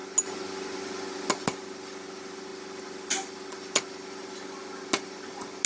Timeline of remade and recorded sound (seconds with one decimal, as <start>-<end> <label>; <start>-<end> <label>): 0.0-5.7 recorded